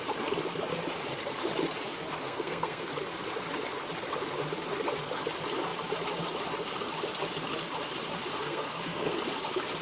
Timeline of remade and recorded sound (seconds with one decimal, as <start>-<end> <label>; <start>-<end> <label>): 0.0-2.2 recorded; 2.2-2.9 remade; 2.9-8.3 recorded; 8.3-9.2 remade; 9.2-9.8 recorded